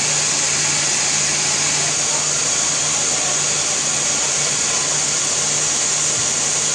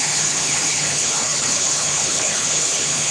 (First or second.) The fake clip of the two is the second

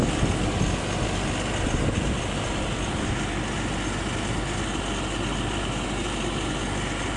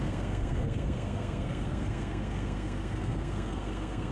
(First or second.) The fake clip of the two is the second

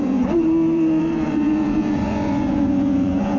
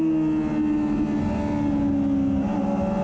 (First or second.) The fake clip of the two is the first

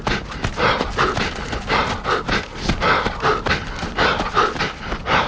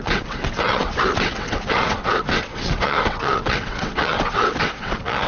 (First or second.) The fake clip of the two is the second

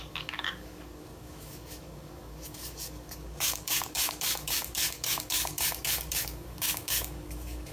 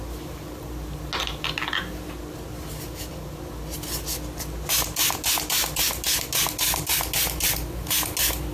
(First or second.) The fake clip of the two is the first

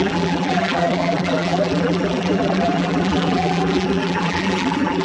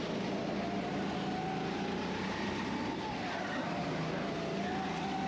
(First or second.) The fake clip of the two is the first